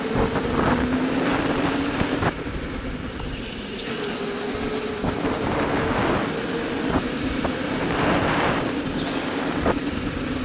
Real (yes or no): yes